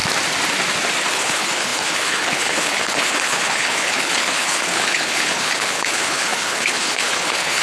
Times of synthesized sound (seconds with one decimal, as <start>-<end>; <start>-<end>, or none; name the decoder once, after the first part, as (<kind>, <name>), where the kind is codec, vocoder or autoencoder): 1.1-7.6 (codec, HILCodec)